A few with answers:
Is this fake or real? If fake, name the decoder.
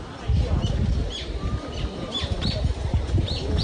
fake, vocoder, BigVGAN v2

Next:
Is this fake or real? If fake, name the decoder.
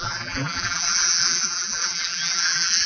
fake, vocoder, BigVGAN v2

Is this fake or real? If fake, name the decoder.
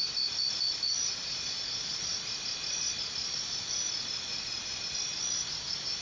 real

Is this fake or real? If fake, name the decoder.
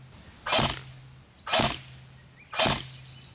real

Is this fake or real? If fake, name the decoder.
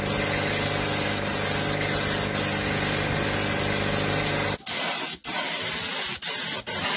real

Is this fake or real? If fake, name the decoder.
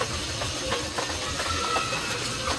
real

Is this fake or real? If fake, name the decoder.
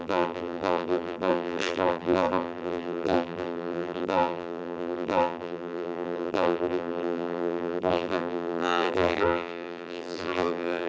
fake, vocoder, BigVGAN v2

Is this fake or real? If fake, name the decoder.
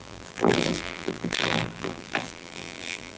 fake, vocoder, BigVGAN v2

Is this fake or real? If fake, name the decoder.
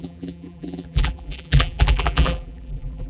fake, vocoder, BigVGAN v2